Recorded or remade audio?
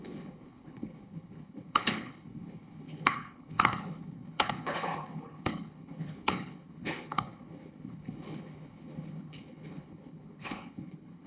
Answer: remade